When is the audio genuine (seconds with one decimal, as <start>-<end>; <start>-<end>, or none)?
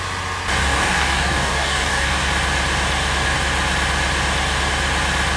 0.0-0.6; 2.3-5.4